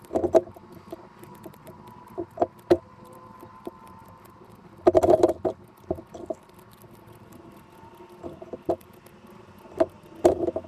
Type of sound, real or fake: fake